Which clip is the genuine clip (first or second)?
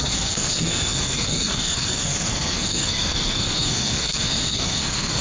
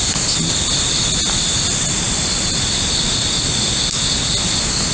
second